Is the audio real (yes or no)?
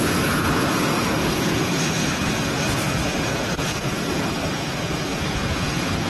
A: no